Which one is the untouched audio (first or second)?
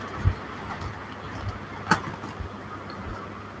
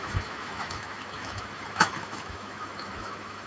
first